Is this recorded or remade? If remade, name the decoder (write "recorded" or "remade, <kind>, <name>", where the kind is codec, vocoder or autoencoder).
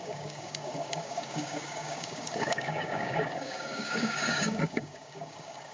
remade, codec, DAC